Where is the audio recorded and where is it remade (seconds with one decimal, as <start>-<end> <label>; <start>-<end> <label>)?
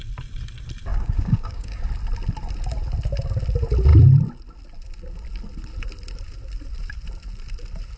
0.0-0.9 recorded; 0.9-1.8 remade; 1.8-8.0 recorded